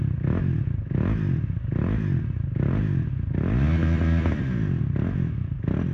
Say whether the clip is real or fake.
real